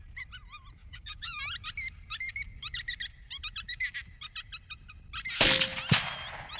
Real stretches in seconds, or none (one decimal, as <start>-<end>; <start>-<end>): 0.0-0.8; 1.4-6.6